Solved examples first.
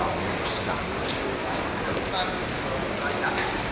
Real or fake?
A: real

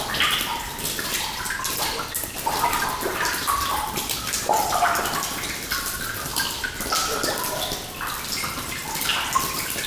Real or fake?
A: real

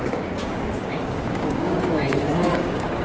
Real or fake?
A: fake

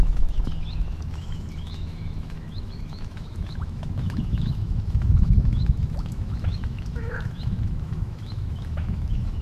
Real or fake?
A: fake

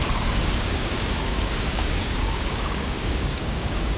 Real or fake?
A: fake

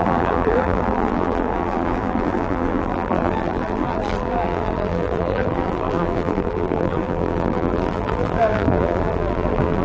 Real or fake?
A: fake